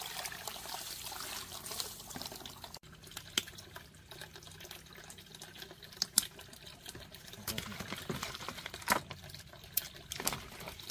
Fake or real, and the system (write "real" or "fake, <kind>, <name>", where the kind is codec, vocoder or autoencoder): real